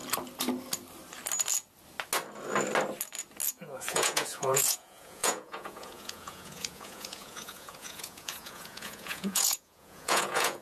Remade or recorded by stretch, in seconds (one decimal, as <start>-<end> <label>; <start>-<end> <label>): 0.0-3.5 recorded; 3.5-10.6 remade